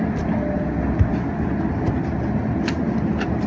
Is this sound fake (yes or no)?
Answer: no